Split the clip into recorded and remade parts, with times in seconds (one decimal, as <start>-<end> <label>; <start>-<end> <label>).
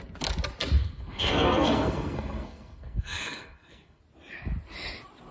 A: 0.0-0.8 recorded; 0.8-4.0 remade; 4.0-5.3 recorded